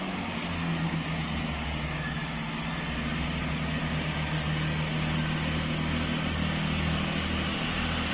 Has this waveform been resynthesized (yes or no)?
no